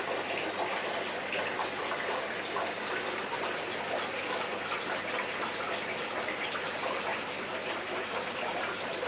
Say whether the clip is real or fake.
real